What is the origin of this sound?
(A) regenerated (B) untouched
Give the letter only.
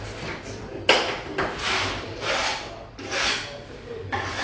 B